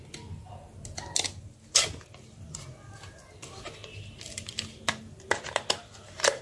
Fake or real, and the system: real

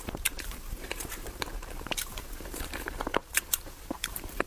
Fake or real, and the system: fake, vocoder, BigVGAN v2